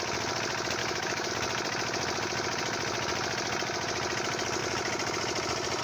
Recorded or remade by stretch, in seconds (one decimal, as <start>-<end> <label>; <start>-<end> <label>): 0.0-0.8 recorded; 0.8-1.3 remade; 1.3-5.8 recorded